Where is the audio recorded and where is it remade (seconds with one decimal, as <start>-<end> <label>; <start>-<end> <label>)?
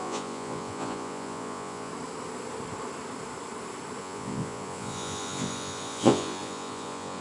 0.0-1.9 remade; 1.9-4.0 recorded; 4.0-7.2 remade